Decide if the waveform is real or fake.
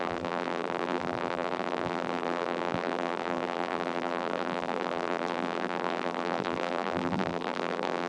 fake